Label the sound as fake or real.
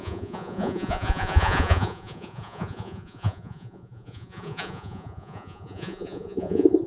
fake